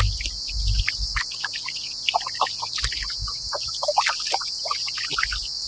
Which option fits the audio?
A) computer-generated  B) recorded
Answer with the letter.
B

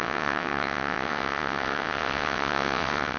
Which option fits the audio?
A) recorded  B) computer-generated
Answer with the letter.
B